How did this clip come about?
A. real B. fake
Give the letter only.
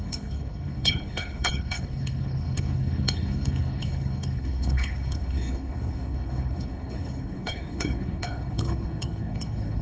B